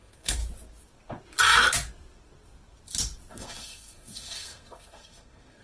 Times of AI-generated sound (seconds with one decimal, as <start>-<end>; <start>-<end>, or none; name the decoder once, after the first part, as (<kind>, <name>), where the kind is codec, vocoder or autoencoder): 0.0-0.4 (codec, SNAC); 3.3-5.6